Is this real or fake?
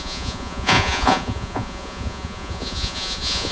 fake